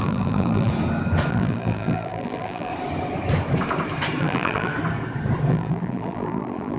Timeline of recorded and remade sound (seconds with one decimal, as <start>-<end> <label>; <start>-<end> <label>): 0.0-0.7 remade; 0.7-1.3 recorded; 1.3-2.7 remade; 2.7-4.2 recorded; 4.2-4.7 remade; 4.7-5.5 recorded; 5.5-6.8 remade